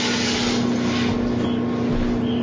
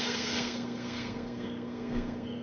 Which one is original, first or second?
first